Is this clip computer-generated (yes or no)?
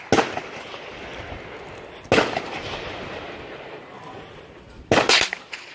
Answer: no